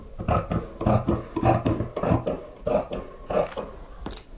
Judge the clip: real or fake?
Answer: real